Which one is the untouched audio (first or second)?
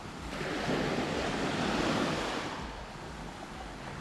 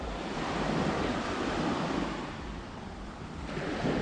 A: first